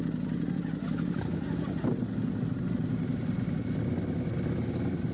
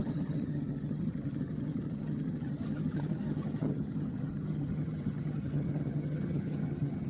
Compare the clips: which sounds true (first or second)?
first